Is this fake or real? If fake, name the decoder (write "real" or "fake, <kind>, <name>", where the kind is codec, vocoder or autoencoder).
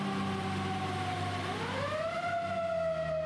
real